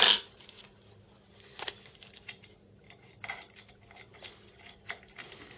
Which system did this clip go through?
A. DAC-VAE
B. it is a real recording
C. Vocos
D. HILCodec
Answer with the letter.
B